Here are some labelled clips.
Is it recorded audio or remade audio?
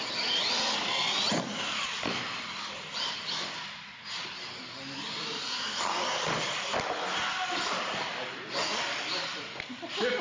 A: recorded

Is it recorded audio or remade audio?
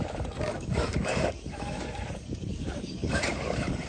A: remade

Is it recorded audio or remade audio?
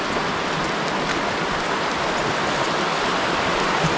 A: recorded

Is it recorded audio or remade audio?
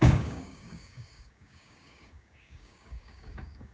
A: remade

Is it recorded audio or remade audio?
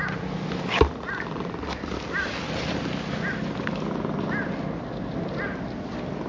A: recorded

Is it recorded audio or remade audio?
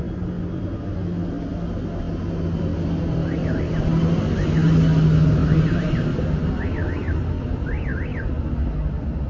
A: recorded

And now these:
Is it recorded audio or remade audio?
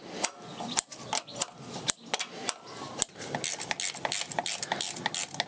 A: recorded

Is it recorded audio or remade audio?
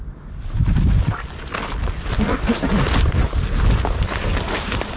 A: recorded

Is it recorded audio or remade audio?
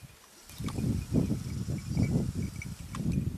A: recorded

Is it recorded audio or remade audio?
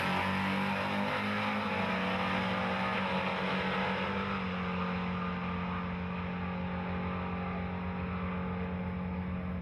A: recorded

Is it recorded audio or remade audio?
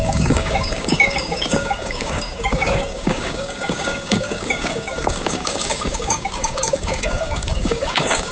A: remade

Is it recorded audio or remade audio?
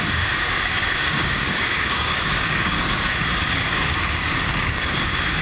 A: remade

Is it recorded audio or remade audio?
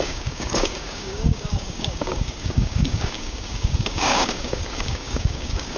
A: remade